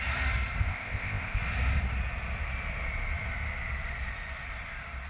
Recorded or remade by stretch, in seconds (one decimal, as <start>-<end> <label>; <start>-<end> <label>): 0.0-0.6 recorded; 0.6-1.4 remade; 1.4-5.1 recorded